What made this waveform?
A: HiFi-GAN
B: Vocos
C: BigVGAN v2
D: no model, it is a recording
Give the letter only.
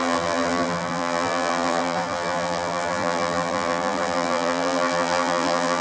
C